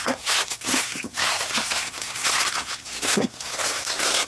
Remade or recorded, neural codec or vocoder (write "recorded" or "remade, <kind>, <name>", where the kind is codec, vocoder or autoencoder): remade, codec, SNAC